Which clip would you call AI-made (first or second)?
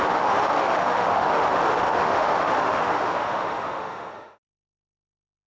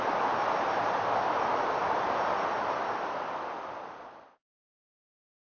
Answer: first